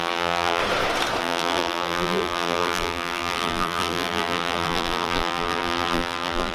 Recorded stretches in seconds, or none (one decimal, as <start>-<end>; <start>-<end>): 0.6-1.2